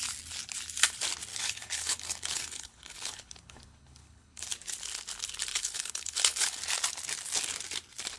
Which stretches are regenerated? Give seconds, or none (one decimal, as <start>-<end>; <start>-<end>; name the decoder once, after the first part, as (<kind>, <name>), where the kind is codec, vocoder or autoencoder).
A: 1.3-4.5 (codec, HILCodec); 5.5-6.6